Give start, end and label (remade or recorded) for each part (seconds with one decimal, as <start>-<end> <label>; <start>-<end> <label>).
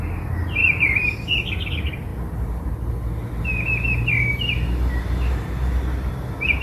0.0-6.6 recorded